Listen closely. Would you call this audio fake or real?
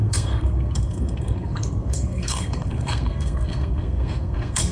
fake